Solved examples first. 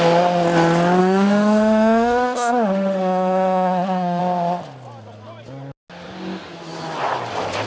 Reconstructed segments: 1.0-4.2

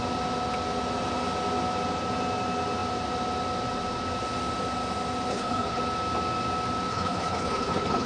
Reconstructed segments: 5.3-5.8; 6.9-8.1

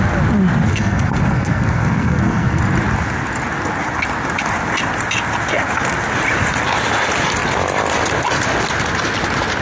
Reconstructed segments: 0.7-2.6

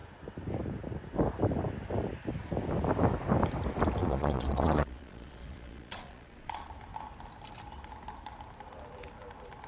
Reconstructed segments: 4.0-6.7

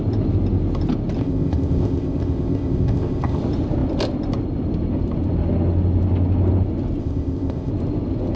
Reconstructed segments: 1.2-3.4; 7.0-7.7

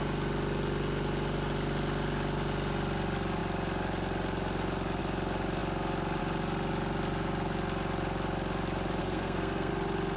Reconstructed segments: 9.0-9.7

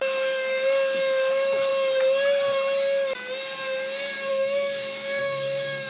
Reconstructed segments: 0.0-1.7; 4.3-5.9